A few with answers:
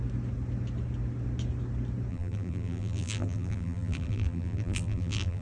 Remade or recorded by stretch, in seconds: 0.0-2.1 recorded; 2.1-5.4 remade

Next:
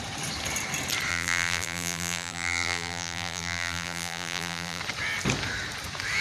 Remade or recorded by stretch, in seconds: 0.0-1.1 recorded; 1.1-4.8 remade; 4.8-6.2 recorded

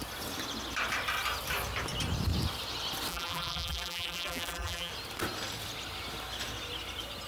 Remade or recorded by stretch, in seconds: 0.0-3.1 recorded; 3.1-4.9 remade; 4.9-7.3 recorded

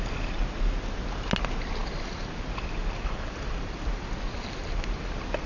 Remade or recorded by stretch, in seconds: 0.0-1.8 recorded; 1.8-5.1 remade; 5.1-5.5 recorded

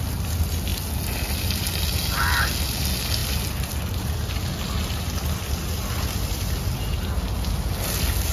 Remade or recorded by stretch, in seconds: 0.0-8.3 recorded